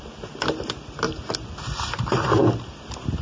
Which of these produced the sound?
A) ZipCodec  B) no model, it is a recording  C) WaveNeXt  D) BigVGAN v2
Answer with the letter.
B